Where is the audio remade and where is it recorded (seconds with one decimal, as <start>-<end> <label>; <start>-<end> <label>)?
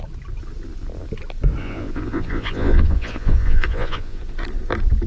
0.0-1.6 recorded; 1.6-4.2 remade; 4.2-5.1 recorded